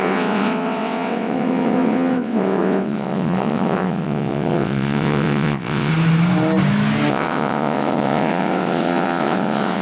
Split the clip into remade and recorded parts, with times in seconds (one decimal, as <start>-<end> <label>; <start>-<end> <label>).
0.0-5.9 remade; 5.9-7.1 recorded; 7.1-9.8 remade